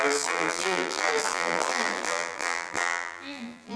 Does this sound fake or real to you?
fake